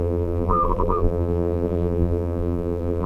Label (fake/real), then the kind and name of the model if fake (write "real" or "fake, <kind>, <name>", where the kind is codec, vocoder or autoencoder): fake, vocoder, BigVGAN v2